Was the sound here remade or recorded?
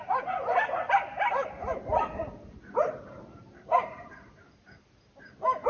recorded